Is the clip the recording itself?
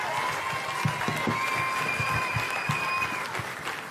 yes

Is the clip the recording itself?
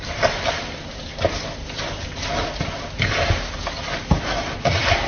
yes